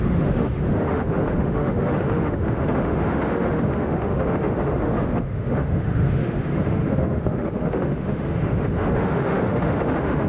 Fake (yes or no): yes